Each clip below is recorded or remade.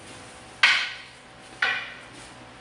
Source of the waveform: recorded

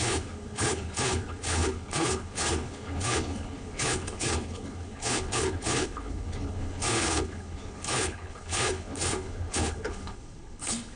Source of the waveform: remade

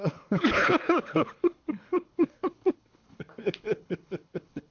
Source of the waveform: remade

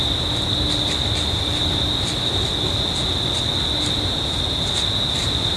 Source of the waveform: recorded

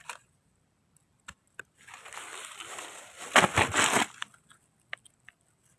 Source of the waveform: recorded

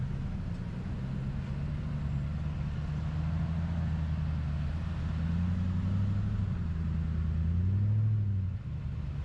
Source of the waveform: recorded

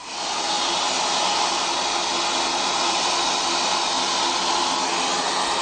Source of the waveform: recorded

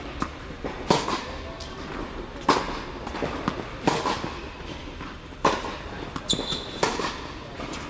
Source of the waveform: recorded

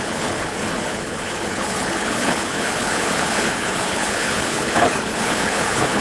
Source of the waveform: remade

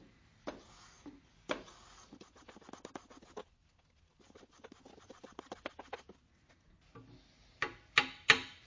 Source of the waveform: recorded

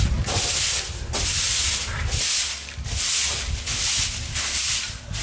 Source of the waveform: recorded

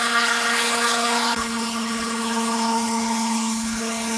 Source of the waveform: remade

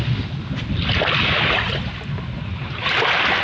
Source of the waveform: recorded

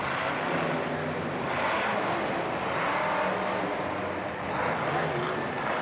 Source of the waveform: recorded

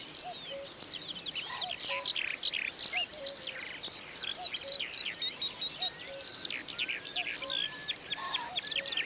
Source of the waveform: recorded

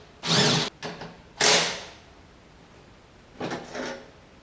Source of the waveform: recorded